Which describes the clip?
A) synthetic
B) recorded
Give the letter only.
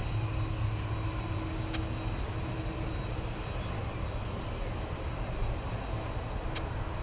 B